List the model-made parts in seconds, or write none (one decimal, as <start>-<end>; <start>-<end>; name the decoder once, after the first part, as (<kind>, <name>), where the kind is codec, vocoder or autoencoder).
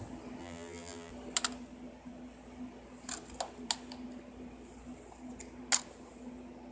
0.4-1.1 (vocoder, BigVGAN v2)